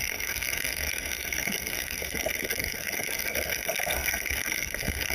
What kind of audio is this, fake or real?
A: fake